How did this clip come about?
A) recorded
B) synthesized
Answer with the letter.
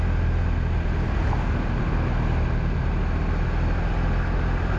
A